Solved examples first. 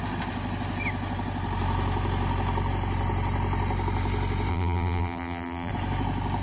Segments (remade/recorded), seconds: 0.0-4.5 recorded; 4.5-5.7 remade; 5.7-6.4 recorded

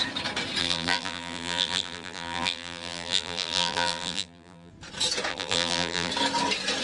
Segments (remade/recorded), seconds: 0.0-0.6 recorded; 0.6-4.7 remade; 4.7-5.3 recorded; 5.3-6.1 remade; 6.1-6.8 recorded

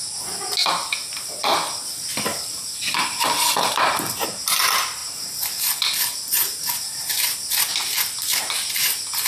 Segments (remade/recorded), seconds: 0.0-0.6 recorded; 0.6-1.4 remade; 1.4-2.3 recorded; 2.3-4.1 remade; 4.1-5.0 recorded; 5.0-7.5 remade; 7.5-9.3 recorded

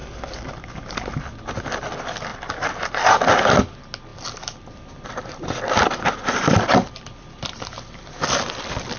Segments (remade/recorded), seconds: 0.0-0.9 remade; 0.9-2.3 recorded; 2.3-3.3 remade; 3.3-4.1 recorded; 4.1-9.0 remade

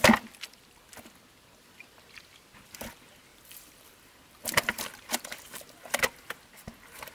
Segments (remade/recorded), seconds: 0.0-3.3 recorded; 3.3-5.1 remade; 5.1-7.1 recorded